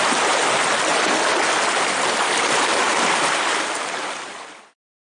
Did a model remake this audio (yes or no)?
no